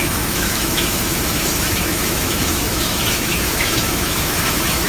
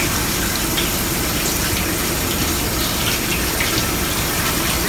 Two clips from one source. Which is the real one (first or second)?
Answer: second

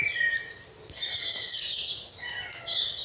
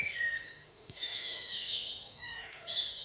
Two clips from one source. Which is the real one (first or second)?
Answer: first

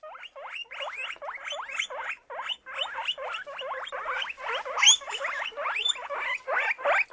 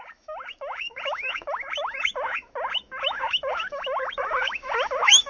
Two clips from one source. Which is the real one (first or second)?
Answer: first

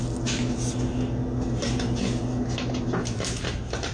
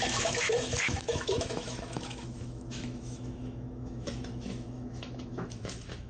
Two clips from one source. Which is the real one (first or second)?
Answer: first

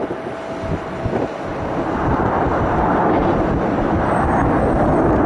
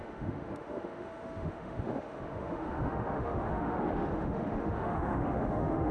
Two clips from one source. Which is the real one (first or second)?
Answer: first